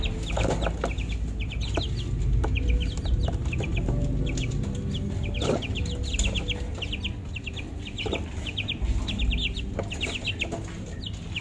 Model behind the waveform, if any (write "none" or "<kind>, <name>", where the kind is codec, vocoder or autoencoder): none